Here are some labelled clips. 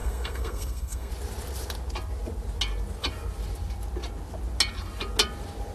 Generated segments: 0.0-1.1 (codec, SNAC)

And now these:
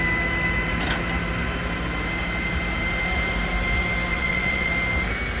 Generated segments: 4.1-4.7 (vocoder, Vocos)

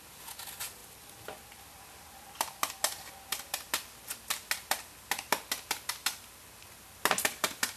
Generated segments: none

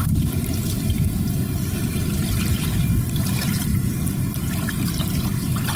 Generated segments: 0.0-3.7 (vocoder, BigVGAN v2); 4.7-5.8

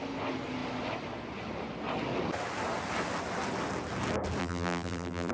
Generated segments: 4.4-5.3 (vocoder, BigVGAN v2)